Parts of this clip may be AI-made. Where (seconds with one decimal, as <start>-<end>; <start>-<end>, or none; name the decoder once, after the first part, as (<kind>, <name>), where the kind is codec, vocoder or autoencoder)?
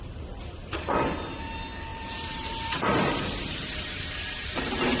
1.9-5.0 (vocoder, BigVGAN v2)